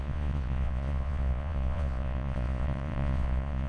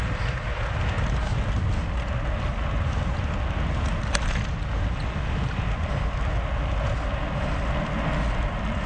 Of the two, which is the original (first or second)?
second